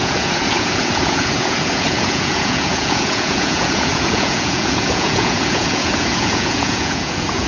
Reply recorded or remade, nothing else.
remade